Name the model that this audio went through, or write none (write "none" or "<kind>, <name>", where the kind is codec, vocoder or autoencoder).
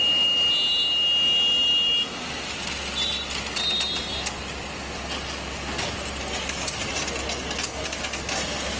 none